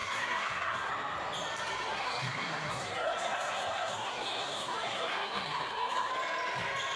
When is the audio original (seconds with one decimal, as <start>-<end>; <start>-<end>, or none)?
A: 0.9-1.9; 6.1-7.0

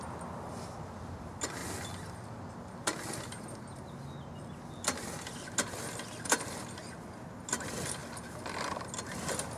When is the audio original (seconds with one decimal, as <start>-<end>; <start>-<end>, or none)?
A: 0.0-9.6

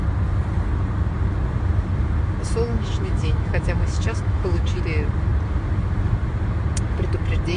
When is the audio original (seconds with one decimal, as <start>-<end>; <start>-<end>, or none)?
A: 0.0-2.7; 4.8-7.6

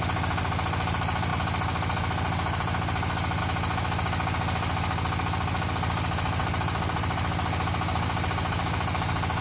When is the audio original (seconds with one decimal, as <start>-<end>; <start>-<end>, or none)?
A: 0.0-9.4

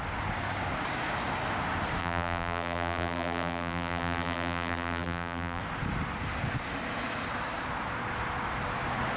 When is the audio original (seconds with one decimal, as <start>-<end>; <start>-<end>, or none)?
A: 0.0-2.0; 5.6-9.2

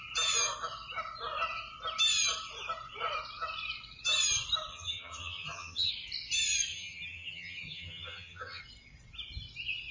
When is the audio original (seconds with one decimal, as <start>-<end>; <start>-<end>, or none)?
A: 0.0-4.7; 5.9-6.7; 8.6-9.9

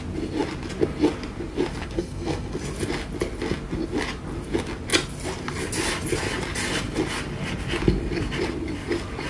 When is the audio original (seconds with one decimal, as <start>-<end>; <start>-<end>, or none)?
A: 0.0-1.8; 2.6-9.3